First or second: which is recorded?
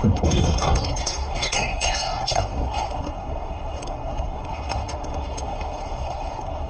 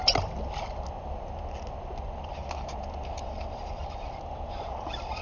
second